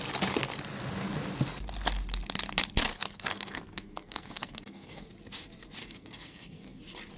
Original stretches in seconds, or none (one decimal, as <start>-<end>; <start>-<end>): 0.0-2.9; 5.1-5.8; 6.8-7.2